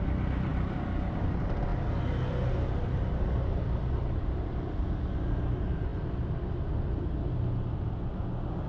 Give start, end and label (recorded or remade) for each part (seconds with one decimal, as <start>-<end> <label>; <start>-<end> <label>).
0.0-8.7 recorded

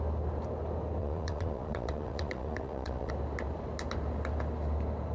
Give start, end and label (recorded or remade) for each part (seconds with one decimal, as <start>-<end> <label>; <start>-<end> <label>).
0.0-1.0 recorded; 1.0-3.1 remade; 3.1-5.1 recorded

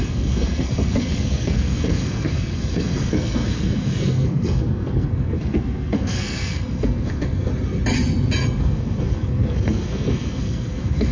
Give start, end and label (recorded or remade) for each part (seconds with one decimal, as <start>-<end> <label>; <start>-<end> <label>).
0.0-7.5 remade; 7.5-8.6 recorded; 8.6-11.1 remade